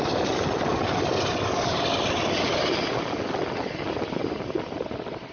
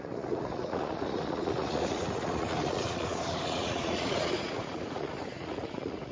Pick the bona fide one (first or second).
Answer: first